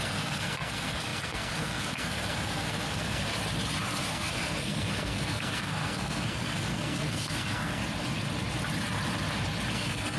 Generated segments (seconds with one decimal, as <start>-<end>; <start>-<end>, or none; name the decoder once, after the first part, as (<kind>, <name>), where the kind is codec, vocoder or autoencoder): 0.0-3.3 (codec, SNAC); 4.1-7.8; 9.7-10.2